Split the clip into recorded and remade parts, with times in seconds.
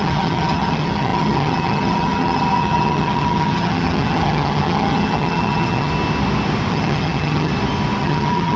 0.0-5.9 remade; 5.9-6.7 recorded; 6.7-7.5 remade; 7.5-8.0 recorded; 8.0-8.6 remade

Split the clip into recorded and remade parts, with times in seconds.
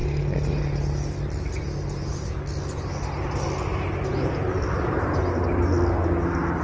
0.0-6.6 recorded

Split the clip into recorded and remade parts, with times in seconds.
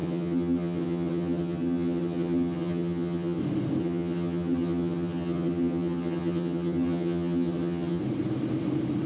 0.0-3.4 remade; 3.4-3.8 recorded; 3.8-8.0 remade; 8.0-9.1 recorded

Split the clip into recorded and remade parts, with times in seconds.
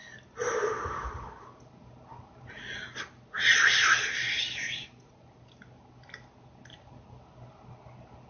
0.0-8.3 recorded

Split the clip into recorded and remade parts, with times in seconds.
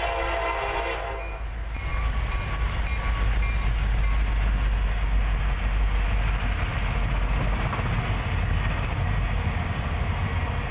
0.0-10.7 recorded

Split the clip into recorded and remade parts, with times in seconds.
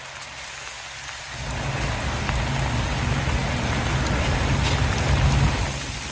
0.0-6.1 recorded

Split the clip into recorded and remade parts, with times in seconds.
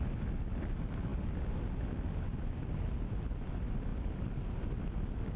0.0-5.4 recorded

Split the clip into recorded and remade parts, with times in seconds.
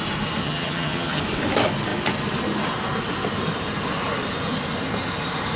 0.0-0.4 recorded; 0.4-1.2 remade; 1.2-5.6 recorded